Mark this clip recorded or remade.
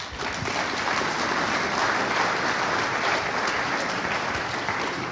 recorded